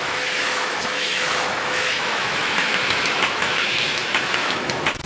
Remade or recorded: remade